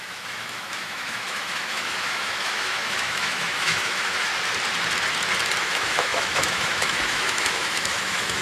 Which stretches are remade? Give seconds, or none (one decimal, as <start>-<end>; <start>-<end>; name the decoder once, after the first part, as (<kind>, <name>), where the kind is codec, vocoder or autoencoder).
0.0-4.3 (autoencoder, DAC-VAE); 5.6-8.4